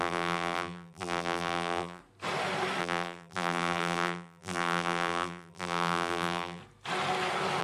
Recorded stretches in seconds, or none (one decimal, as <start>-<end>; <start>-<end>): 2.0-2.8; 6.6-7.6

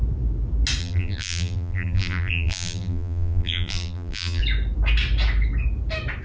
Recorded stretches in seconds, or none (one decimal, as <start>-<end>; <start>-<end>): 0.0-0.8; 4.4-6.2

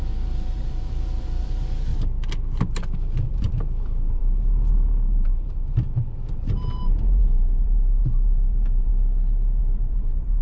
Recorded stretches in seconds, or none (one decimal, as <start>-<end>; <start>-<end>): 1.9-2.6; 4.2-4.7; 8.9-9.6

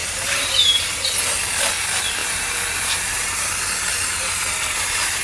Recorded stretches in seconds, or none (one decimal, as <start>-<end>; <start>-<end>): 1.0-2.2; 3.5-3.9

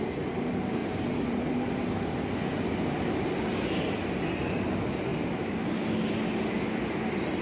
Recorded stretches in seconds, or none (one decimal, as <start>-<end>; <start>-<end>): 0.0-0.8; 1.4-2.5; 3.8-5.1; 5.9-7.4

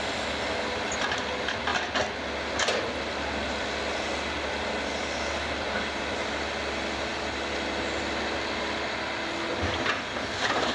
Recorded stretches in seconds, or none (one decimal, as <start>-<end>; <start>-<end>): 0.0-10.7

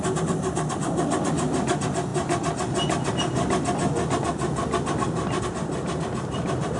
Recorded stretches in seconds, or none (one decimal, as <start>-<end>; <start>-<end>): 2.1-5.4

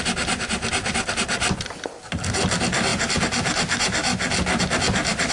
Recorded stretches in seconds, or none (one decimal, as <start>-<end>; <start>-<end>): 0.0-5.3